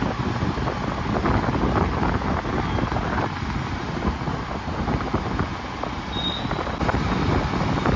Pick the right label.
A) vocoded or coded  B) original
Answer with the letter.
B